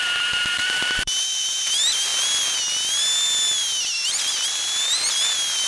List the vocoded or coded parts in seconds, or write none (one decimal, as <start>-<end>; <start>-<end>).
0.0-2.1